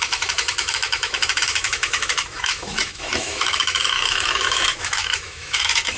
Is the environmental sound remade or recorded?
remade